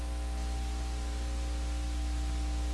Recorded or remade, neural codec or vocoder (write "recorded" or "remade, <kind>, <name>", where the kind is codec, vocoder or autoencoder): recorded